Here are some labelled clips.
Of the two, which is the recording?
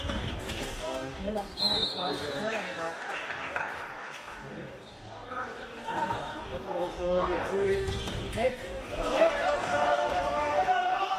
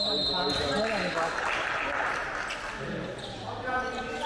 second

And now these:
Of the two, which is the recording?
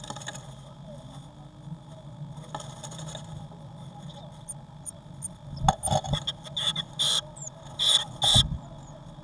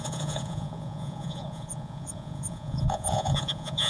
first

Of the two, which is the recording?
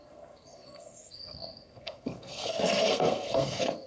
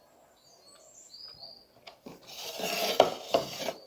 second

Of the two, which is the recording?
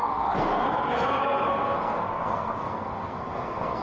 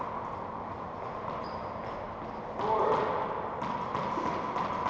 second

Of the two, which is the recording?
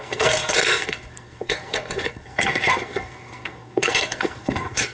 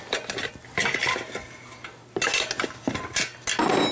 second